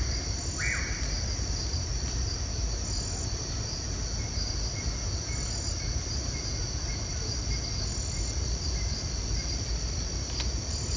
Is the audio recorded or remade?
recorded